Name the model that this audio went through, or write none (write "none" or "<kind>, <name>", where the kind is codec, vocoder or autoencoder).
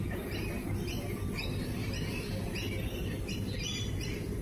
none